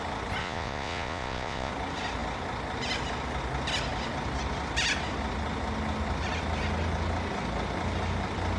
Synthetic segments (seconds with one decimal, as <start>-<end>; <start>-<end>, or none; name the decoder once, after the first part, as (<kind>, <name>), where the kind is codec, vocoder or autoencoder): 0.4-1.7 (vocoder, Vocos)